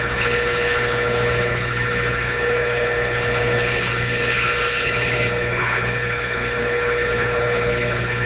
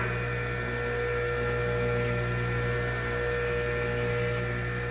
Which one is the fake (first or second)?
first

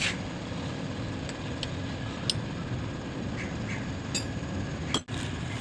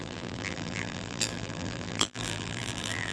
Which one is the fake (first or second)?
second